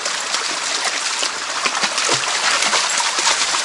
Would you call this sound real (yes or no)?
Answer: yes